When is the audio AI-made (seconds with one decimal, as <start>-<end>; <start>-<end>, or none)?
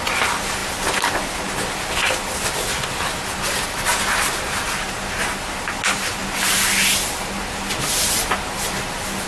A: none